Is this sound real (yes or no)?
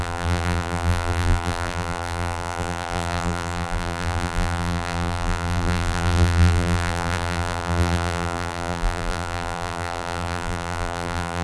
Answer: no